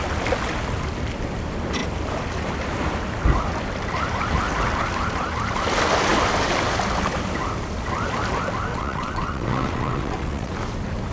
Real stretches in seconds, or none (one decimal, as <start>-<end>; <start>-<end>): 0.0-8.7; 10.5-11.1

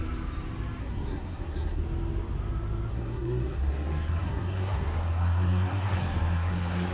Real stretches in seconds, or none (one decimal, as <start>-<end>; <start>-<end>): 0.0-0.8; 1.8-2.9

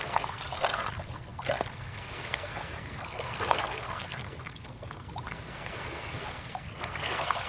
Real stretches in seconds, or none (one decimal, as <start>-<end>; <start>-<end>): none